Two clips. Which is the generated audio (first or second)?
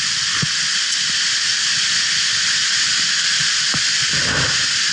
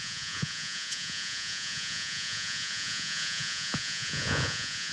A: second